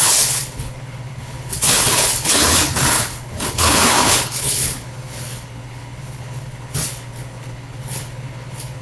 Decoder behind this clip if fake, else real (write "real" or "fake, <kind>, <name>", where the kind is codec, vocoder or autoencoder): fake, codec, HILCodec